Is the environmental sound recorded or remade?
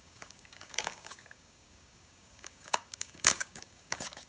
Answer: remade